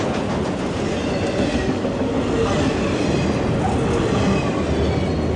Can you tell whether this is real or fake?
real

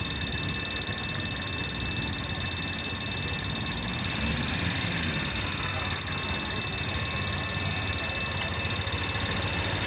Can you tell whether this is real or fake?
real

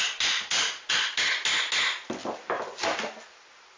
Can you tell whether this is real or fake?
real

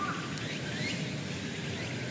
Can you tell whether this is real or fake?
real